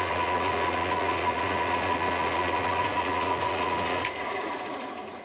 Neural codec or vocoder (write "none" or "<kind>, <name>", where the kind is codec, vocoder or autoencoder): vocoder, Vocos